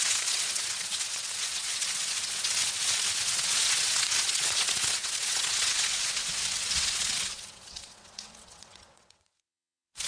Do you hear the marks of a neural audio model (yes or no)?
yes